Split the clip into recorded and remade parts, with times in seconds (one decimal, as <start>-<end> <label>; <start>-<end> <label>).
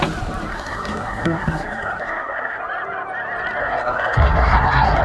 0.0-0.5 recorded; 0.5-2.6 remade; 2.6-3.6 recorded; 3.6-5.0 remade